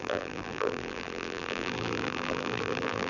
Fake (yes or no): yes